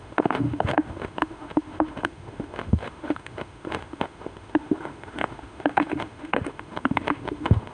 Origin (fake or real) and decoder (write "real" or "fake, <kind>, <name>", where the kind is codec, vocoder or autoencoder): fake, autoencoder, DAC-VAE